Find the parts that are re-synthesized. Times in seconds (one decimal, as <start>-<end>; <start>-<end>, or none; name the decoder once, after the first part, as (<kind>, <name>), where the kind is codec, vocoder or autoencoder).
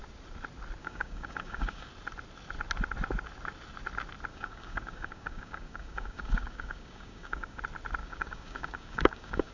0.8-1.9 (codec, DAC); 4.3-7.6; 8.0-9.5